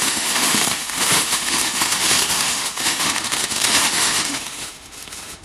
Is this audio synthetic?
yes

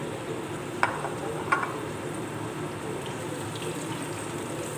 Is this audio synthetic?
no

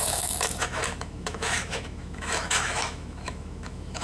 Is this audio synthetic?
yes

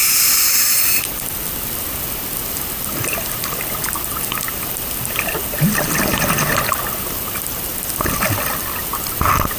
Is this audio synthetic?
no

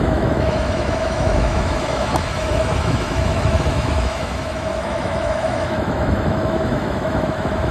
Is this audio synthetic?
yes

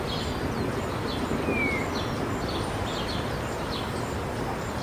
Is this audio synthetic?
no